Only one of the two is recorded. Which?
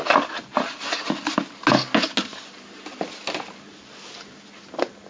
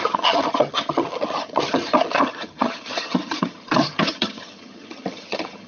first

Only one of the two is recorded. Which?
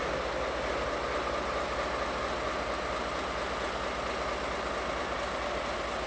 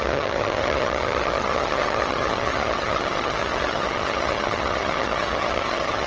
first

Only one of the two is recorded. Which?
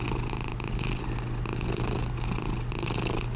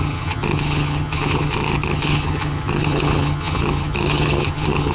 first